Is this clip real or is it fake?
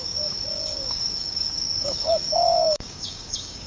fake